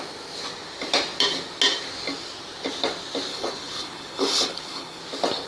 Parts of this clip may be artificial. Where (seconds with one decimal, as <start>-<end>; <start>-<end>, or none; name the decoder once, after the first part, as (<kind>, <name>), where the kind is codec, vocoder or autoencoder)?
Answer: 3.3-5.0 (codec, HILCodec)